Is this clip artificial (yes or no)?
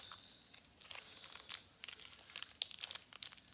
no